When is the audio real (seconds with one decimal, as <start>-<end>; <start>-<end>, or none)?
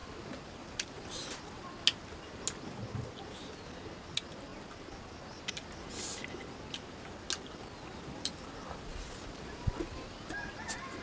0.0-11.0